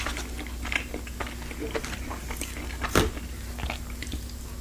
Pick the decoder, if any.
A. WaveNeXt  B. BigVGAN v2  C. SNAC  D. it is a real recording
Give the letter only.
D